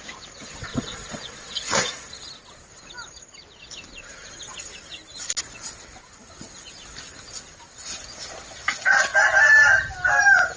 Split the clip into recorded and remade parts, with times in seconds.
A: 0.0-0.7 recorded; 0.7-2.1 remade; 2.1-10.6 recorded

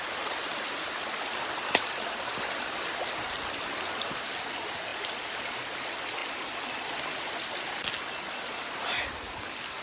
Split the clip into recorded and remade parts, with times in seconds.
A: 0.0-9.8 recorded

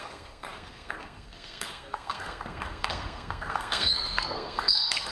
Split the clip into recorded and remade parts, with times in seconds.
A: 0.0-5.1 remade

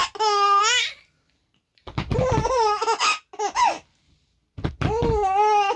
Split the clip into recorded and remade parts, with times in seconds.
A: 0.0-1.7 recorded; 1.7-2.3 remade; 2.3-5.8 recorded

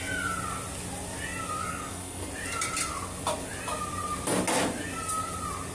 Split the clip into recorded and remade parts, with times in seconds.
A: 0.0-1.7 recorded; 1.7-2.3 remade; 2.3-5.7 recorded